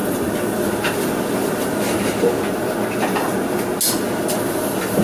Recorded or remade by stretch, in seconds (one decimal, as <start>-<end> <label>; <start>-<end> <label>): 0.0-5.0 recorded